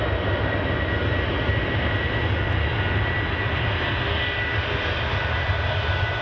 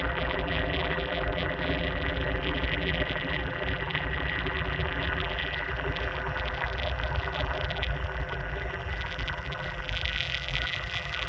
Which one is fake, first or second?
second